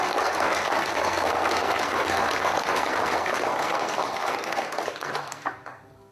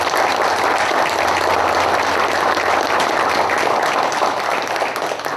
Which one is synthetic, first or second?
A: first